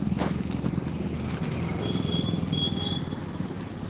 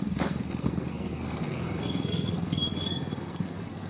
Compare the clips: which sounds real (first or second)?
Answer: first